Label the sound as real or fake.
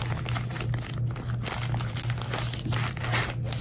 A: real